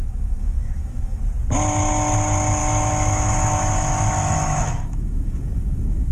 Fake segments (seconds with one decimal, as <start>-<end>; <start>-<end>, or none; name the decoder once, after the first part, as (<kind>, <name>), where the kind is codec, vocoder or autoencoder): 0.0-1.2 (autoencoder, DAC-VAE); 2.6-6.1